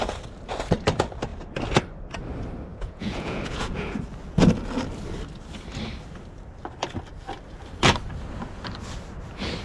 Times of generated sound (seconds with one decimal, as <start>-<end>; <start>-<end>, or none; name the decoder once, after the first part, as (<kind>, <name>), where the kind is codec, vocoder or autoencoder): 2.7-4.0 (vocoder, Vocos)